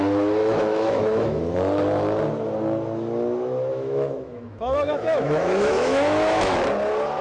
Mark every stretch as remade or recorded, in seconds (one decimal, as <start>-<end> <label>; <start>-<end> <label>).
0.0-0.4 recorded; 0.4-1.4 remade; 1.4-3.7 recorded; 3.7-6.7 remade; 6.7-7.2 recorded